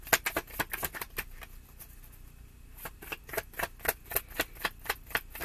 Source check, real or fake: real